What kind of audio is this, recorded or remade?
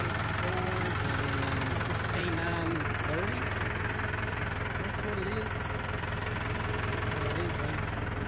remade